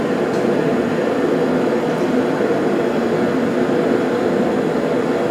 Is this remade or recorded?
recorded